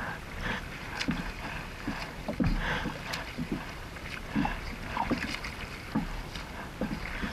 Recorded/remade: recorded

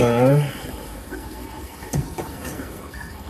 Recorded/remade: remade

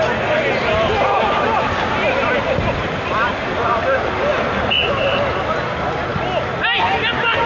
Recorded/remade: recorded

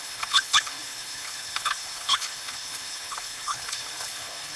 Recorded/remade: remade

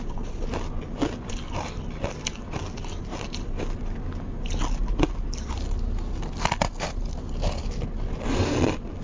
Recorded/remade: recorded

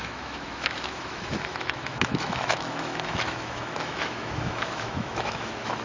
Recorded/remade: remade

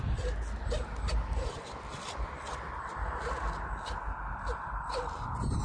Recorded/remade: recorded